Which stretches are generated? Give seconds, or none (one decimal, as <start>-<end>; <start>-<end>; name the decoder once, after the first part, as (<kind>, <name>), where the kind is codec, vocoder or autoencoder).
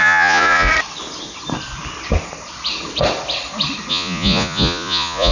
0.0-0.7 (vocoder, Vocos); 3.9-5.3